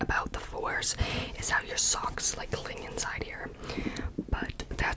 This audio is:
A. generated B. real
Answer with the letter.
B